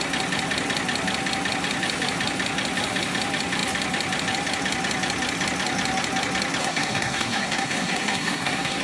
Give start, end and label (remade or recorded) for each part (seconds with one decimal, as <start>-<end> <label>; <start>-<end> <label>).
0.0-6.6 recorded; 6.6-8.8 remade